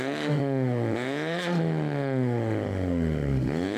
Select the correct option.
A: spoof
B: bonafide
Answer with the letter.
A